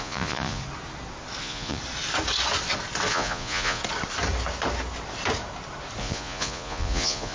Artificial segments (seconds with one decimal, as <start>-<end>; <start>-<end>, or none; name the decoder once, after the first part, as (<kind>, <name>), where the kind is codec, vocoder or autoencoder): 0.0-0.6 (vocoder, Vocos); 1.4-1.8; 3.1-3.8; 6.0-7.3

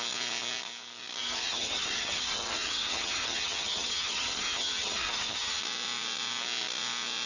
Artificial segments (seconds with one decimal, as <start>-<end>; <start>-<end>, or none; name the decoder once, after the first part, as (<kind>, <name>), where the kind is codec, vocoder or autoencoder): 1.2-5.6 (vocoder, HiFi-GAN)

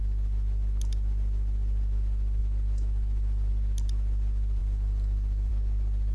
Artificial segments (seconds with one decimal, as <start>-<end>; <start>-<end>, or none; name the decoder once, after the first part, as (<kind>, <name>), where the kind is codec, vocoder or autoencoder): none

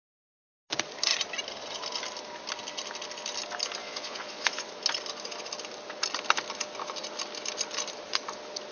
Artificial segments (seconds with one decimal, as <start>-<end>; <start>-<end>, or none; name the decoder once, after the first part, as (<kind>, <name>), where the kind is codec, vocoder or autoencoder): 3.8-4.7 (vocoder, Vocos)

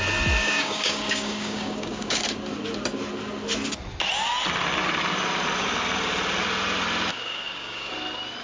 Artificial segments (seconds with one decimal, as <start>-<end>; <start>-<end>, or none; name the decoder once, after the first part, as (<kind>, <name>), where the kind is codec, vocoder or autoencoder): 0.4-2.2 (codec, DAC); 7.1-7.9

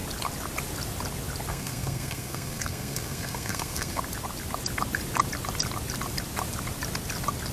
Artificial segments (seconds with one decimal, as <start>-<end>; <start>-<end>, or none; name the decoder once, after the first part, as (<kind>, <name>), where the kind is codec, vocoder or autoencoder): 1.5-4.0 (codec, SNAC)

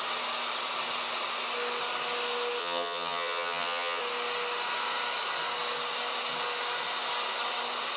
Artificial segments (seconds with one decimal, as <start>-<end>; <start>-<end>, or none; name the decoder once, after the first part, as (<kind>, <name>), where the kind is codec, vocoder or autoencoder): 2.6-4.0 (vocoder, HiFi-GAN)

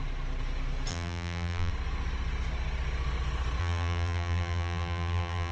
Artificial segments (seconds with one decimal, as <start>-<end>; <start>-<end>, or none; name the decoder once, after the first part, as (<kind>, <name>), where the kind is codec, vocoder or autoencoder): 0.9-1.7 (vocoder, BigVGAN v2); 3.6-5.5